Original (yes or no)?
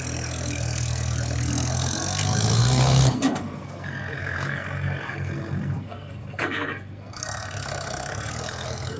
no